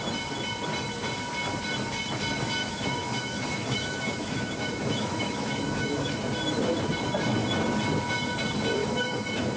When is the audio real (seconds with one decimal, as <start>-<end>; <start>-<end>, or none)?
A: 0.0-2.6; 6.2-8.8